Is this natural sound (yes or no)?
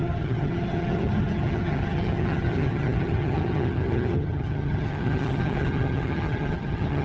no